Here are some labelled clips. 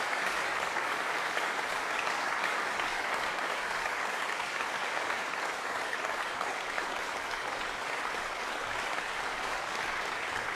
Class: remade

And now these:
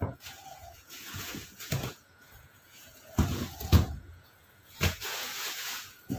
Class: remade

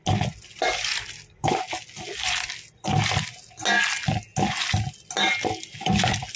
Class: recorded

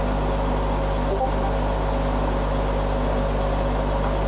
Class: recorded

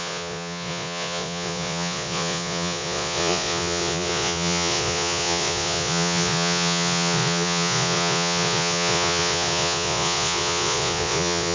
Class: remade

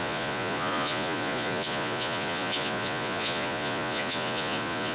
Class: remade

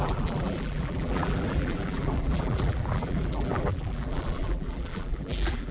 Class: remade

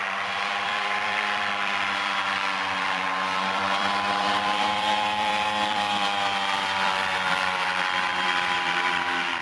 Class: remade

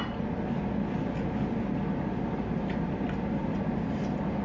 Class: recorded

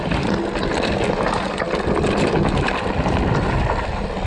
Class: recorded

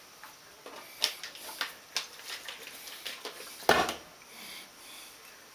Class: recorded